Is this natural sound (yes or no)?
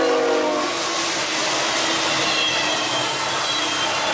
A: yes